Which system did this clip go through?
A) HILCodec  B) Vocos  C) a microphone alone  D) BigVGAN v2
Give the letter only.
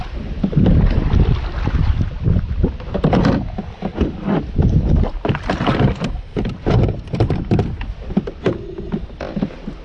D